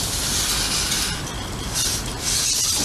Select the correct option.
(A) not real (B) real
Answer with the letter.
A